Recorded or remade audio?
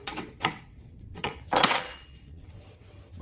remade